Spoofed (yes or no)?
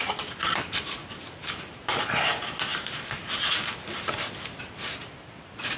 no